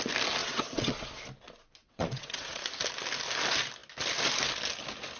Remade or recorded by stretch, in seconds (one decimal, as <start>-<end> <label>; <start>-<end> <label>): 0.0-0.4 recorded; 0.4-1.0 remade; 1.0-1.8 recorded; 1.8-2.6 remade; 2.6-5.2 recorded